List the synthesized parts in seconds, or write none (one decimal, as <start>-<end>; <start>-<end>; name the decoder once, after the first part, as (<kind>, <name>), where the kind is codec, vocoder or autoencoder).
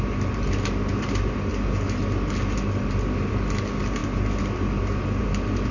none